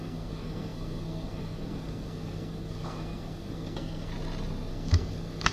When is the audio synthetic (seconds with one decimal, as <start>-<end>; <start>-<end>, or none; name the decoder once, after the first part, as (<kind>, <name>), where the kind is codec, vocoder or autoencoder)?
0.0-4.1 (codec, SNAC); 4.7-5.5